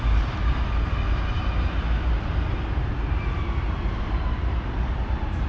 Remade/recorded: recorded